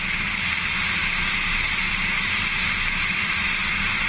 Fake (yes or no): no